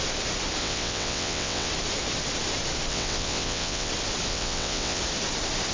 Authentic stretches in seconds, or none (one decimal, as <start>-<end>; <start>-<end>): 0.0-0.6; 1.7-2.9; 3.9-4.3; 5.0-5.7